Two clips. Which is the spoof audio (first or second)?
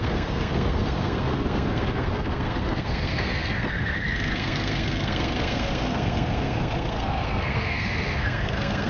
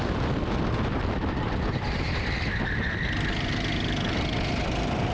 first